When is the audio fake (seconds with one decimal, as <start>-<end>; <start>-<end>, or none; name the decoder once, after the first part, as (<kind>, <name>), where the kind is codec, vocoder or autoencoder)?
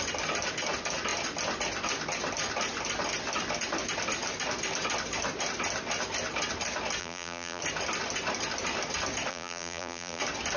7.0-7.6 (vocoder, BigVGAN v2); 9.3-10.2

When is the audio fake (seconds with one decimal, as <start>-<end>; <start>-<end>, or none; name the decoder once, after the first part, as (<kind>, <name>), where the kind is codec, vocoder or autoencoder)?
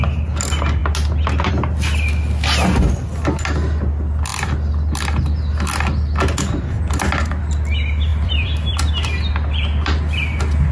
8.1-8.8 (vocoder, BigVGAN v2)